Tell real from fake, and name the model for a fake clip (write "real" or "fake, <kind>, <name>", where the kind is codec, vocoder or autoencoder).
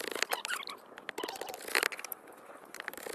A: real